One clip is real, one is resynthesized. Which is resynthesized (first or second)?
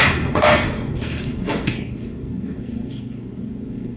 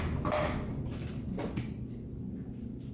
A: first